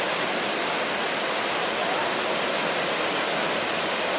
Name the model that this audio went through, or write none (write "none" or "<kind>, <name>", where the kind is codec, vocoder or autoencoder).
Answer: none